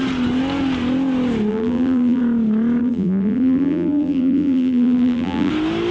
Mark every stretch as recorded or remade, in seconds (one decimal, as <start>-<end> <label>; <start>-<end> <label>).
0.0-1.5 recorded; 1.5-2.2 remade; 2.2-2.8 recorded; 2.8-5.5 remade; 5.5-5.9 recorded